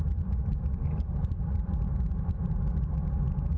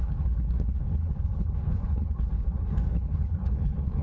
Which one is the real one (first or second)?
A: first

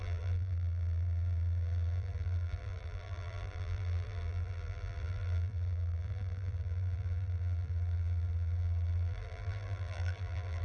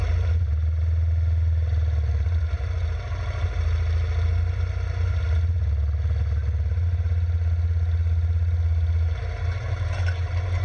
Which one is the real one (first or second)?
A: second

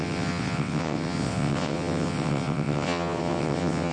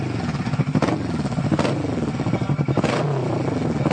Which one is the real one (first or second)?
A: second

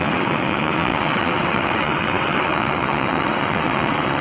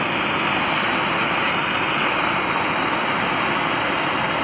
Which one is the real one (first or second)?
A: second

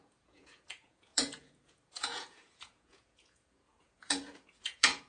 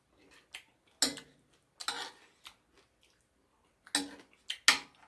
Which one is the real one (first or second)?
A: second